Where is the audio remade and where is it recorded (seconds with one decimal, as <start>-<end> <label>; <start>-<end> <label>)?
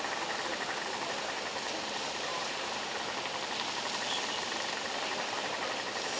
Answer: 0.0-2.3 recorded; 2.3-2.8 remade; 2.8-6.2 recorded